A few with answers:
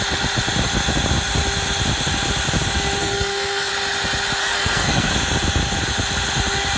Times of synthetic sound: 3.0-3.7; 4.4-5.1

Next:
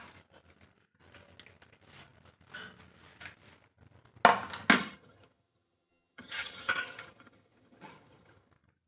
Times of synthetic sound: 4.8-8.5

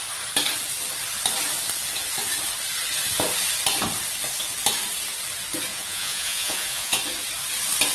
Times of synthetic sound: 5.7-7.0